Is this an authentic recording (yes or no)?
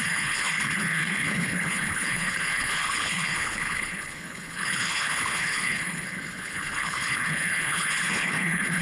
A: no